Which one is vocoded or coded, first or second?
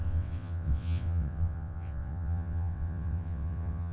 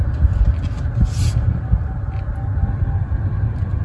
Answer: first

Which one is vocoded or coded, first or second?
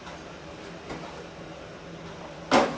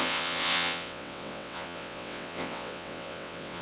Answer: second